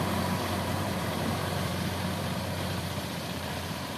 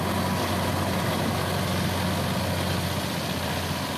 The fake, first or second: first